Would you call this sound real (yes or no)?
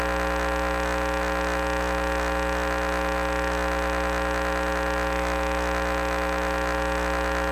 yes